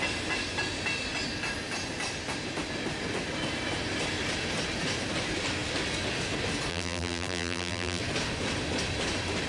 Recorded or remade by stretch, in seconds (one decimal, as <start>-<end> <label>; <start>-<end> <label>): 0.0-6.7 recorded; 6.7-8.0 remade; 8.0-9.5 recorded